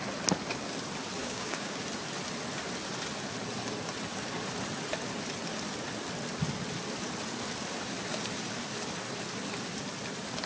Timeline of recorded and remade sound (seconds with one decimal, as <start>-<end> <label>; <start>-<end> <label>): 0.0-1.2 recorded; 1.2-1.8 remade; 1.8-10.5 recorded